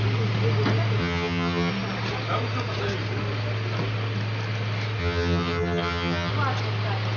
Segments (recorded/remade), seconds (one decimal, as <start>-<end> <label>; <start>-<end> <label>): 0.0-1.0 recorded; 1.0-1.7 remade; 1.7-5.0 recorded; 5.0-6.3 remade; 6.3-7.2 recorded